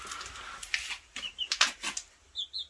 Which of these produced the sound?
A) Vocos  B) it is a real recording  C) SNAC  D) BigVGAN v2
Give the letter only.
B